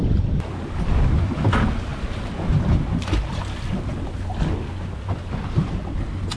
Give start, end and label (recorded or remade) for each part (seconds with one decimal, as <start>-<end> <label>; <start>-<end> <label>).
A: 0.0-6.4 recorded